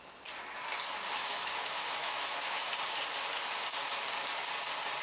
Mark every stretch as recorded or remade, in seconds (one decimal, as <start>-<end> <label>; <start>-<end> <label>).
0.0-1.2 recorded; 1.2-2.6 remade; 2.6-5.0 recorded